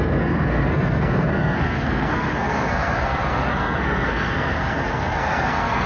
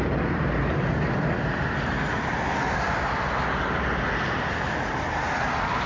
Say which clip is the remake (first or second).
first